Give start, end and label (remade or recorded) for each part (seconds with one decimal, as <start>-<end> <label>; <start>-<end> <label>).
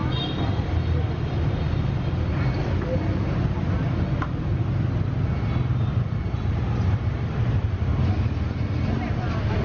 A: 0.0-9.6 recorded